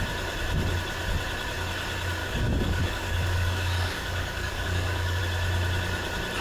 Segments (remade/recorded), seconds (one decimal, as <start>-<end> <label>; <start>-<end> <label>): 0.0-2.2 recorded; 2.2-5.2 remade; 5.2-6.4 recorded